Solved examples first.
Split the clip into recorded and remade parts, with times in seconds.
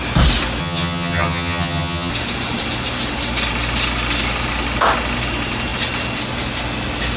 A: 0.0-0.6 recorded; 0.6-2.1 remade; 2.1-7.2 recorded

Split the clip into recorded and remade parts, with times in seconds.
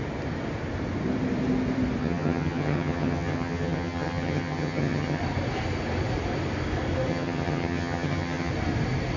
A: 0.0-2.0 recorded; 2.0-5.2 remade; 5.2-7.1 recorded; 7.1-8.5 remade; 8.5-9.2 recorded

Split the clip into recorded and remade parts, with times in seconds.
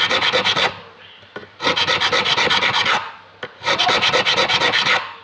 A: 0.0-5.2 recorded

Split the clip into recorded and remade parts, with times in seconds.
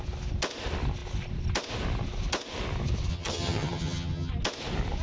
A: 0.0-3.1 recorded; 3.1-4.3 remade; 4.3-5.0 recorded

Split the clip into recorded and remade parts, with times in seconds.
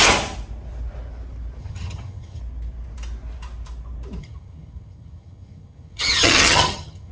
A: 0.0-1.6 recorded; 1.6-2.4 remade; 2.4-4.2 recorded; 4.2-7.1 remade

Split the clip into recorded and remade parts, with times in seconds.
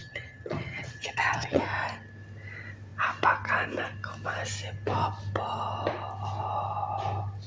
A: 0.0-1.6 remade; 1.6-7.5 recorded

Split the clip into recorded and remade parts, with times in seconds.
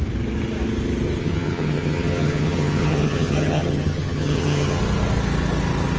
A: 0.0-1.2 recorded; 1.2-4.8 remade; 4.8-6.0 recorded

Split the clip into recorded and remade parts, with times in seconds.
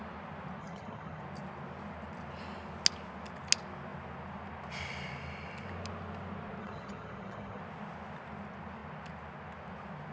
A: 0.0-0.6 recorded; 0.6-1.2 remade; 1.2-6.6 recorded; 6.6-7.6 remade; 7.6-10.1 recorded